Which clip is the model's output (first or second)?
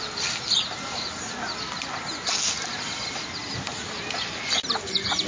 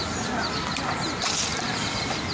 second